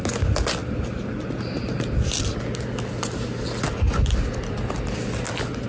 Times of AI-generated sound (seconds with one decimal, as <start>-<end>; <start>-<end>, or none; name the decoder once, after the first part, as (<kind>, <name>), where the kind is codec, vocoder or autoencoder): none